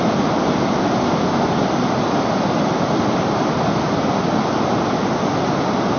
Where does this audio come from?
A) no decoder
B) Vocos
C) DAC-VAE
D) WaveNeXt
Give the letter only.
A